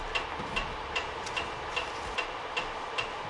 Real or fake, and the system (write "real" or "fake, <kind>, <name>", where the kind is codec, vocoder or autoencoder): real